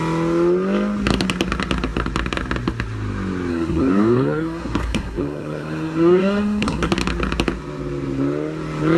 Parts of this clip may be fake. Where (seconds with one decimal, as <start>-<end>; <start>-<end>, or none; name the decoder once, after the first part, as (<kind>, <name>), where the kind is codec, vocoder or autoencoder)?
3.5-6.9 (codec, SNAC)

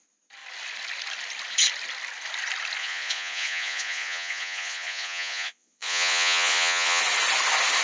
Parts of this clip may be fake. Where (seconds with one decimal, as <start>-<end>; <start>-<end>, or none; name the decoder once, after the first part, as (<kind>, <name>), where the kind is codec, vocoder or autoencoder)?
2.8-7.0 (vocoder, Vocos)

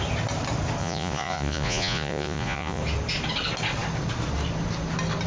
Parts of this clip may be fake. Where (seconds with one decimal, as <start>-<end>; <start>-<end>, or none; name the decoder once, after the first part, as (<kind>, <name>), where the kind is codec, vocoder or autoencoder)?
0.8-2.8 (vocoder, Vocos)

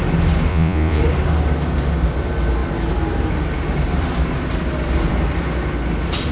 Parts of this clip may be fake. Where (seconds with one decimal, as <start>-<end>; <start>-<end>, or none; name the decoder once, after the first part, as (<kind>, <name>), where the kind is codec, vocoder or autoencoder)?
0.5-1.0 (vocoder, Vocos)

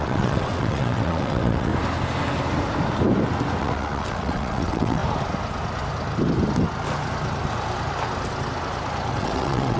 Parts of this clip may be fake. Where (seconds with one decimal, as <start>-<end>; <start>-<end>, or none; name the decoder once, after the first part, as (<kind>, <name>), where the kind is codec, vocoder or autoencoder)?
0.0-1.7 (vocoder, WaveNeXt); 3.6-5.0; 9.1-9.8